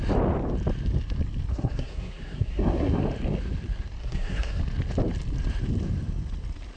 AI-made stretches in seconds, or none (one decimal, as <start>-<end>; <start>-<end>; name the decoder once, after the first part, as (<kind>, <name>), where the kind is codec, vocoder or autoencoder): 1.5-3.0 (codec, SNAC); 4.0-4.6